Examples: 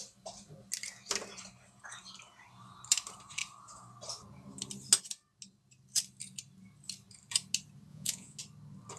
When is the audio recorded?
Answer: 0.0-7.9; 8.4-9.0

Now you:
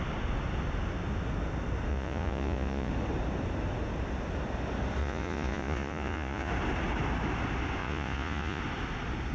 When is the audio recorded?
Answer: 0.0-1.9; 2.9-5.0; 6.5-7.8; 8.6-9.3

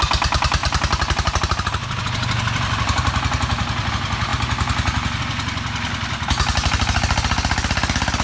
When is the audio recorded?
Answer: 0.0-8.2

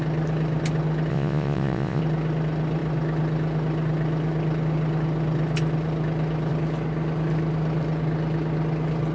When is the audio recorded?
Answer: 0.0-1.1; 2.0-9.1

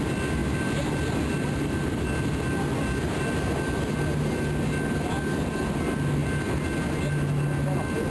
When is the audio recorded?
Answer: 0.0-8.1

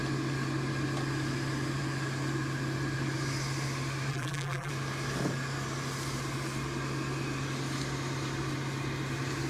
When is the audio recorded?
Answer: 0.0-4.1; 4.7-9.5